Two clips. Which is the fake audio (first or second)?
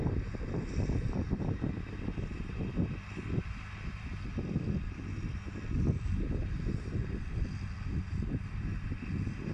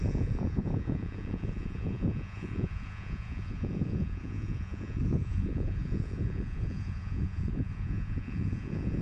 second